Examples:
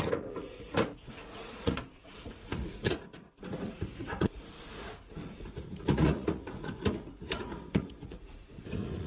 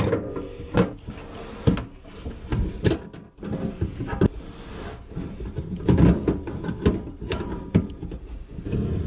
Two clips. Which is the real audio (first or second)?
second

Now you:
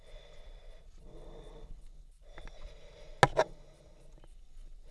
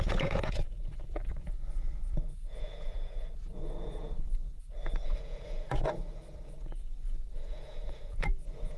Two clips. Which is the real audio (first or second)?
first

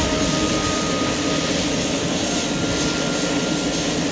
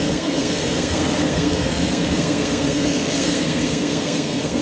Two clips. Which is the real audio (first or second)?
first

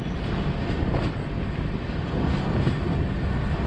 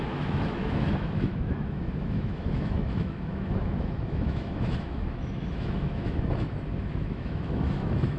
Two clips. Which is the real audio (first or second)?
first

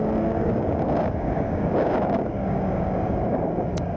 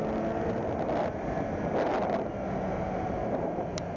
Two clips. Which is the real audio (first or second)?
second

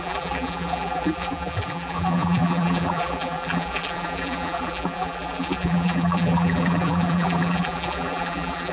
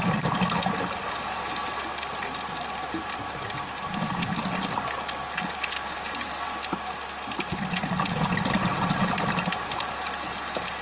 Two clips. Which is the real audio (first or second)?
second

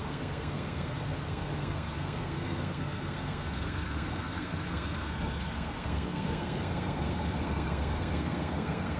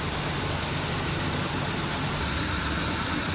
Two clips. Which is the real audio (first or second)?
second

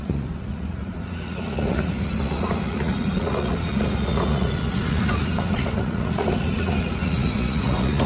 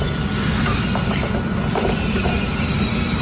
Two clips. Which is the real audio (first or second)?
second